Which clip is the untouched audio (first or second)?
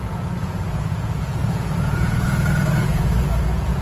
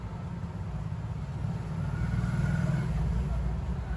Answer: second